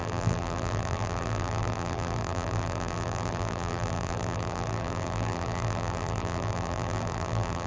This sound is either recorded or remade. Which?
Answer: remade